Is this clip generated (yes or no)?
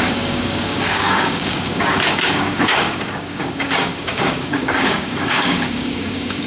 yes